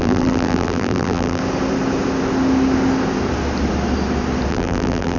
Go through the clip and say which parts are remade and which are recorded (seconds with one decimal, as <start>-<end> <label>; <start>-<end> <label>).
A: 0.0-1.4 remade; 1.4-4.5 recorded; 4.5-5.2 remade